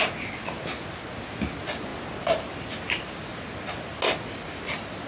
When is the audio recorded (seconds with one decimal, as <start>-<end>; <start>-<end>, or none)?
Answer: 0.0-5.1